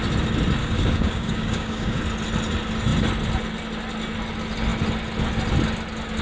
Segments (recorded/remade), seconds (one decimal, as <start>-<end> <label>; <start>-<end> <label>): 0.0-0.6 recorded; 0.6-2.0 remade; 2.0-6.2 recorded